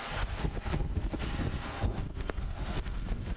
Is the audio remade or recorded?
remade